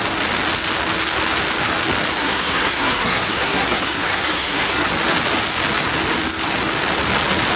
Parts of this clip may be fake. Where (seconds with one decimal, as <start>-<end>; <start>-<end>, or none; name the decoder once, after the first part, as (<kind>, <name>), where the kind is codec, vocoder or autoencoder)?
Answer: 2.2-4.9 (codec, SNAC)